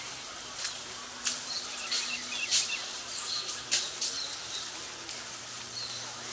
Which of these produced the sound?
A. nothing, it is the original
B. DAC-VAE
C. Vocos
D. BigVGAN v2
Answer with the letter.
A